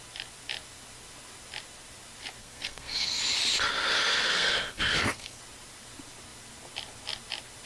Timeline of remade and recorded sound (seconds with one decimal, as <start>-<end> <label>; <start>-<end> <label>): 0.0-2.4 recorded; 2.4-3.2 remade; 3.2-4.1 recorded; 4.1-5.4 remade; 5.4-7.7 recorded

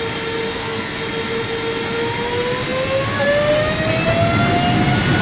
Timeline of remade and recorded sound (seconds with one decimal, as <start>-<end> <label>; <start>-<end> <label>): 0.0-0.5 recorded; 0.5-1.0 remade; 1.0-5.2 recorded

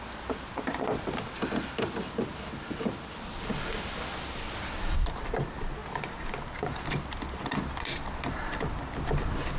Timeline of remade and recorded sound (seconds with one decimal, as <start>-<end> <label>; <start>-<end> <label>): 0.0-9.6 recorded

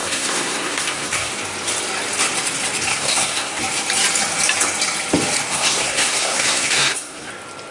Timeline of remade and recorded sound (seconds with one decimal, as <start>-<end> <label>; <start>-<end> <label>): 0.0-1.3 remade; 1.3-2.9 recorded; 2.9-3.6 remade; 3.6-5.5 recorded; 5.5-7.3 remade; 7.3-7.7 recorded

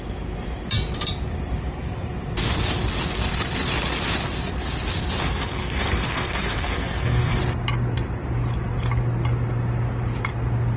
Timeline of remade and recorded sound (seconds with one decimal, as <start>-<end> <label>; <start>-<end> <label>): 0.0-5.2 recorded; 5.2-7.4 remade; 7.4-10.8 recorded

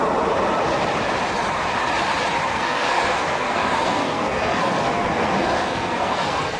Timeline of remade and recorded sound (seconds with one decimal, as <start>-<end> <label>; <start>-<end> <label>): 0.0-2.5 recorded; 2.5-6.6 remade